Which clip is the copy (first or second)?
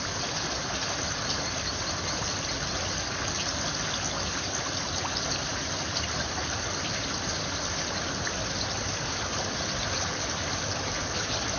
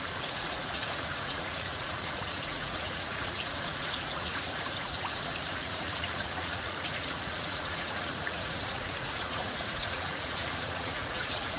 second